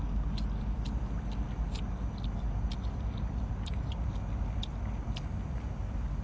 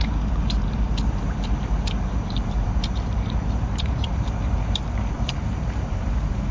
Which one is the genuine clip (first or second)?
first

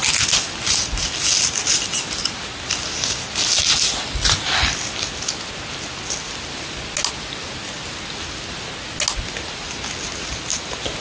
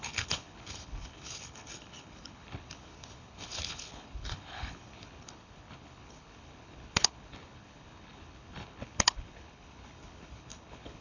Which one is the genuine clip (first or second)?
first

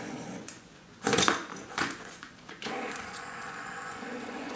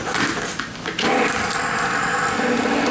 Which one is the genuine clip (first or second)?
second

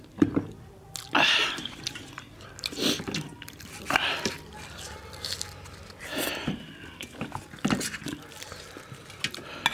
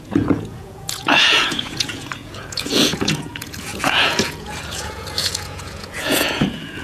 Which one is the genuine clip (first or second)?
first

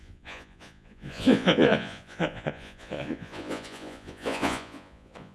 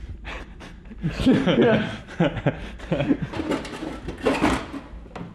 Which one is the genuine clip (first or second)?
second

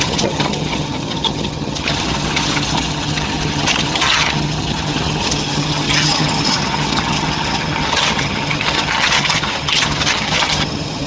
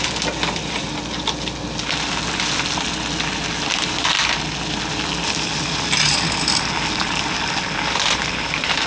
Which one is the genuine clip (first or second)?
second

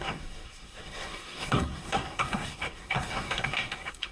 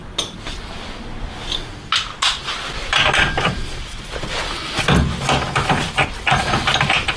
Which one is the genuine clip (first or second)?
second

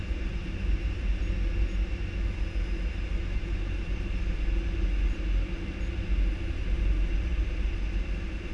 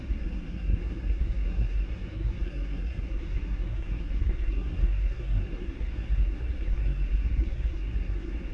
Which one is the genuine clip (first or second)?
first